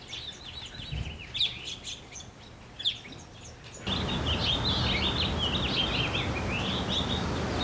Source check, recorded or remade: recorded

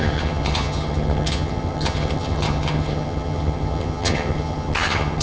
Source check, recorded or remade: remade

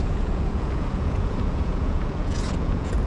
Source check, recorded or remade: remade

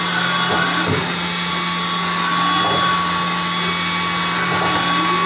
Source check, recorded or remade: recorded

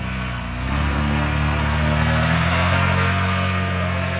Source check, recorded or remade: remade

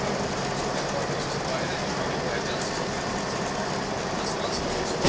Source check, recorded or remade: recorded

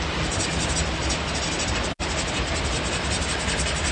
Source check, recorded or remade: recorded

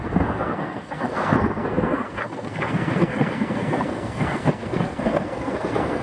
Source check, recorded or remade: remade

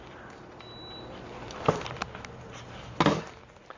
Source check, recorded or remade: recorded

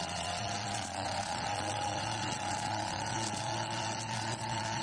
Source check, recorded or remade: remade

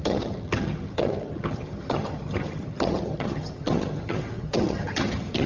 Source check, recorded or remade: remade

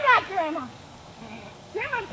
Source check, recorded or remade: remade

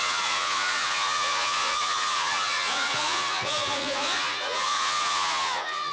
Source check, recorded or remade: remade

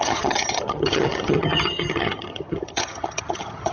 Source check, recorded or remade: remade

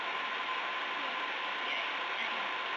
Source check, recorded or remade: recorded